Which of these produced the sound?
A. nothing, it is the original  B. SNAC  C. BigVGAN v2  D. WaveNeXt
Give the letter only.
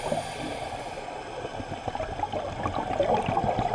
C